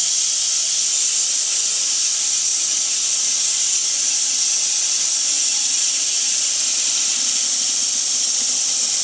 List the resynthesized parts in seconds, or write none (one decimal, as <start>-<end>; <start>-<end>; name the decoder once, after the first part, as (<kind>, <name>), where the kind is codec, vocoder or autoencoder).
none